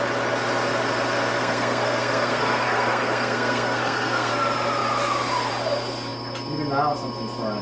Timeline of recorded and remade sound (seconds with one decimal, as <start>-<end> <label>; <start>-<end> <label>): 0.0-1.4 recorded; 1.4-4.3 remade; 4.3-7.6 recorded